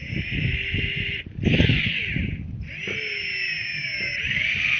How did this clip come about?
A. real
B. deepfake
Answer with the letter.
A